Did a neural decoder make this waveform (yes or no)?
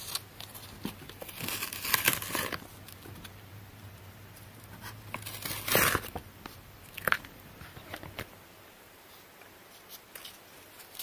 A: no